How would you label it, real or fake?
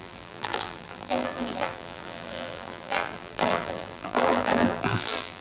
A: fake